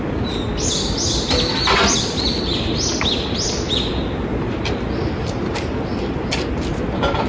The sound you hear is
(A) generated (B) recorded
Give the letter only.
B